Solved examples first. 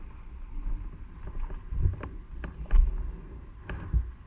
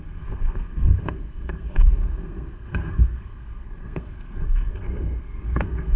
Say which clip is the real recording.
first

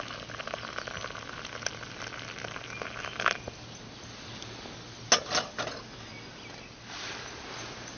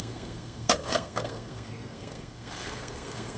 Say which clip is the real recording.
first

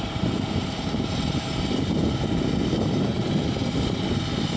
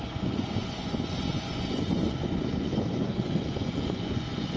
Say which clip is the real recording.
first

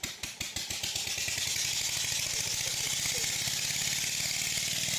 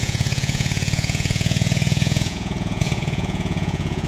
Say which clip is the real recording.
first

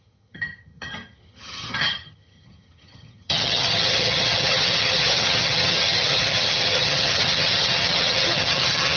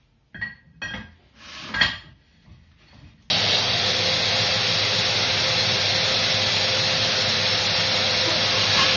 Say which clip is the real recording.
second